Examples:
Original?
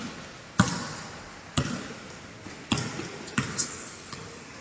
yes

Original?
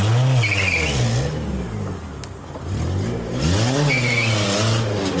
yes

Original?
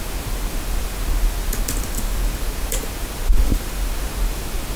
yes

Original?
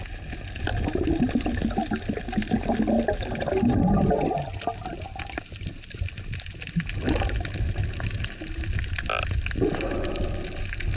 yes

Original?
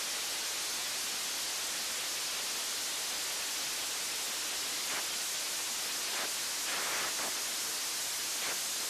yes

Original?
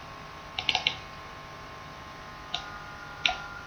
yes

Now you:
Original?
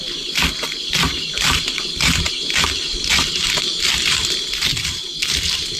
yes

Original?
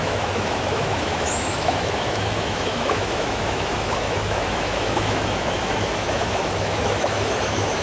no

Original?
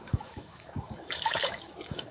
no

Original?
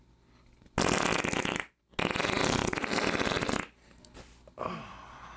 yes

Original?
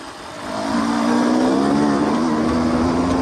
yes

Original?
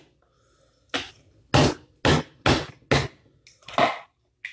yes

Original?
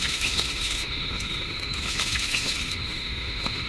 no